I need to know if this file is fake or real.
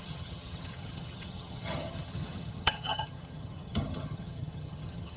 fake